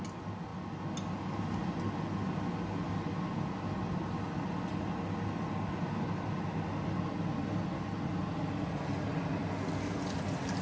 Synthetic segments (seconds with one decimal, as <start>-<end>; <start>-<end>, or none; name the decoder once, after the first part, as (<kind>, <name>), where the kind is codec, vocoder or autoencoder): none